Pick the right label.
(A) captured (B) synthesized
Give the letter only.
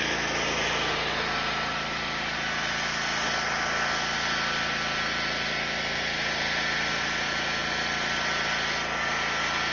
A